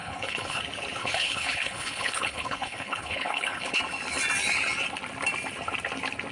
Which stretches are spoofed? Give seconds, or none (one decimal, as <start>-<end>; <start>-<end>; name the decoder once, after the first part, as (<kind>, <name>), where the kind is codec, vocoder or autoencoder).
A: 0.0-0.6 (codec, HILCodec); 1.0-3.8